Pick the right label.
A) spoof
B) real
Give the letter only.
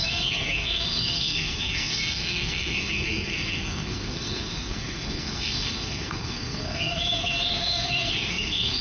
A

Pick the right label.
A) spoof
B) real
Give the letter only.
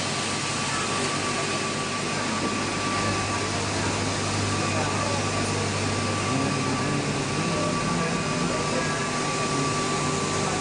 B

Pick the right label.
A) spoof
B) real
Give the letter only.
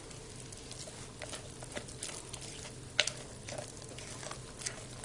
B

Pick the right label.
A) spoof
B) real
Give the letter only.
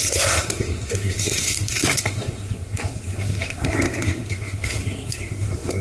A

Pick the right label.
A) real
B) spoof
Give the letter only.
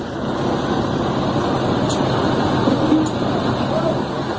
A